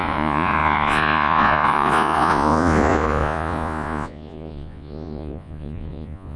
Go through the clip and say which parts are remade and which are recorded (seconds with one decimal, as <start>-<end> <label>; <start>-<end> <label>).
0.0-6.4 remade